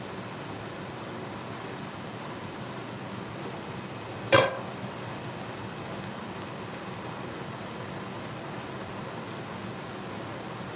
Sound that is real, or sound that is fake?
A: real